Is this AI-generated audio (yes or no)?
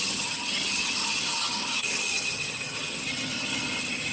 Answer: yes